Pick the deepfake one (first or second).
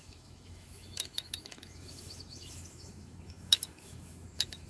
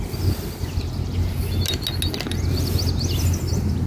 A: first